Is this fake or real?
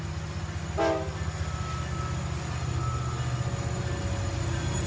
real